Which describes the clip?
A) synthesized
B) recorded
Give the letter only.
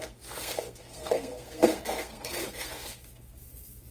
A